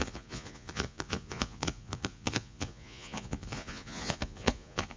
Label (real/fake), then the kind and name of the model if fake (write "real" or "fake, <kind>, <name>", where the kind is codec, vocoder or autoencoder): fake, vocoder, Vocos